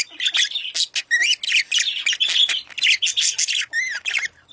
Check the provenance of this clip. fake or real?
real